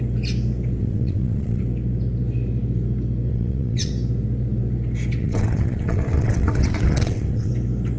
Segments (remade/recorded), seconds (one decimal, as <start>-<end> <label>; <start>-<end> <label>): 0.0-0.8 recorded; 0.8-1.6 remade; 1.6-3.3 recorded; 3.3-3.9 remade; 3.9-5.2 recorded; 5.2-7.5 remade; 7.5-8.0 recorded